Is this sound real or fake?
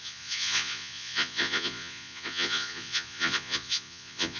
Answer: fake